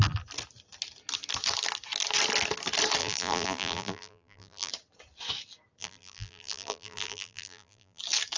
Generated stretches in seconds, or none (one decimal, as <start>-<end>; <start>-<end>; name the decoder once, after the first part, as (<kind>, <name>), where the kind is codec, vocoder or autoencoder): 3.0-4.7 (vocoder, BigVGAN v2); 5.8-8.0